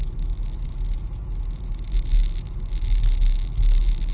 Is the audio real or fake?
real